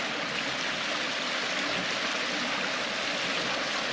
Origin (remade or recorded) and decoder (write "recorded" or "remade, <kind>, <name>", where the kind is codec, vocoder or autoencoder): recorded